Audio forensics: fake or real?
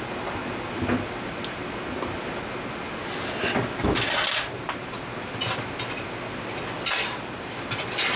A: real